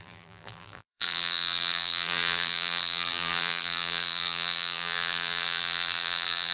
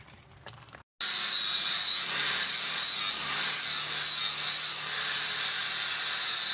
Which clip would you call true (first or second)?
second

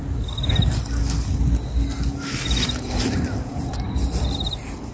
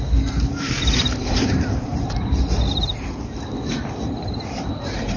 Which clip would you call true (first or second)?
first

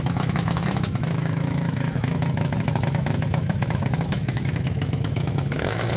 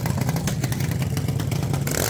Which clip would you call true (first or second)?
second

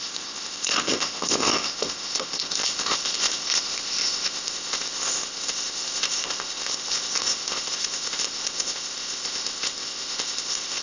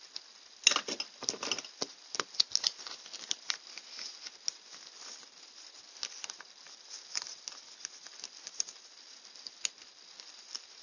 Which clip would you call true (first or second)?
second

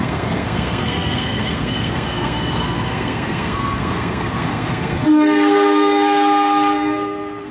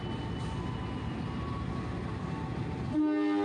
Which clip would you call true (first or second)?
second